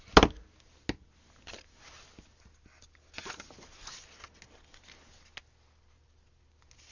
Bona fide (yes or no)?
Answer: yes